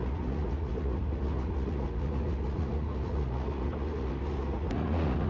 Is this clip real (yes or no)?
no